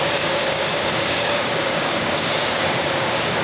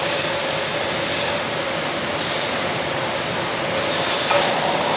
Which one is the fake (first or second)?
first